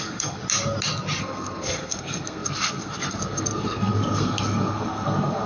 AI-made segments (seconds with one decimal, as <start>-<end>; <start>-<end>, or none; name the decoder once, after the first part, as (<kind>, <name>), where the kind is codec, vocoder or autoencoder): 0.0-0.4 (codec, SNAC); 1.2-5.5